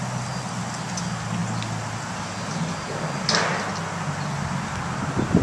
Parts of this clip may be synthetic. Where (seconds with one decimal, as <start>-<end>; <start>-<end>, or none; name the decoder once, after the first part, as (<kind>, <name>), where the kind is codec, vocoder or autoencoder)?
none